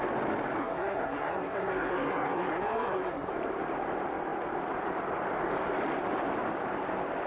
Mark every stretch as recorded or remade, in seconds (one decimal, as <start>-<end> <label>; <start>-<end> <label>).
0.0-0.6 recorded; 0.6-3.3 remade; 3.3-7.3 recorded